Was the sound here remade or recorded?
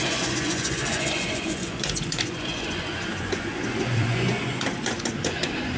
remade